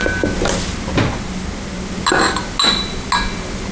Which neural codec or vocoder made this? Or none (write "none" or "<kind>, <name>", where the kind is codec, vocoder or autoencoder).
none